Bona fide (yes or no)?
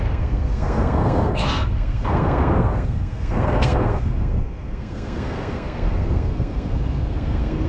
no